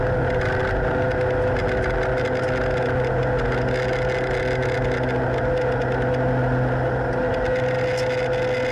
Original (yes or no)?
yes